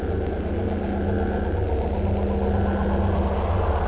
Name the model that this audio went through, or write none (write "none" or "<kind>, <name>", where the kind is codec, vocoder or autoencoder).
none